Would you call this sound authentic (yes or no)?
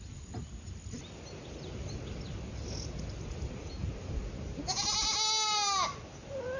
yes